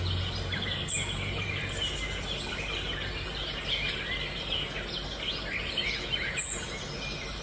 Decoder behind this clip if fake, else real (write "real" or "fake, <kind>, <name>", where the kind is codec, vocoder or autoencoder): real